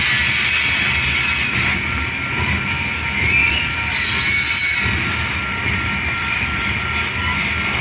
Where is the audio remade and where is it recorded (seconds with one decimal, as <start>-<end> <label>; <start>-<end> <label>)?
0.0-3.4 recorded; 3.4-4.3 remade; 4.3-7.8 recorded